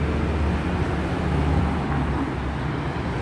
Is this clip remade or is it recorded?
recorded